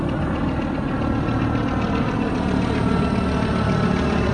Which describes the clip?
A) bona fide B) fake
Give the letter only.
A